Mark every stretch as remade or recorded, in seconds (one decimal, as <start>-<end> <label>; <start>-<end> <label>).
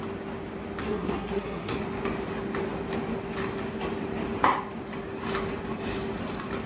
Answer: 0.0-0.8 recorded; 0.8-1.8 remade; 1.8-6.7 recorded